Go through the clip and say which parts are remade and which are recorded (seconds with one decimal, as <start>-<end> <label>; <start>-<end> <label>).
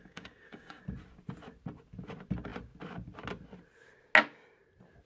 0.0-0.8 remade; 0.8-5.0 recorded